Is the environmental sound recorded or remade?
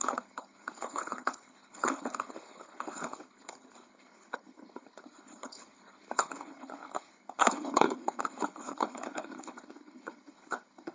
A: remade